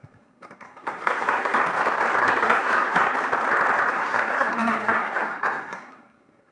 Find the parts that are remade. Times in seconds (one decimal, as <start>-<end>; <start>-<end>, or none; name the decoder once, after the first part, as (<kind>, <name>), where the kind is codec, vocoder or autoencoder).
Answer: 0.0-1.6 (codec, SNAC); 2.2-3.1; 3.9-6.5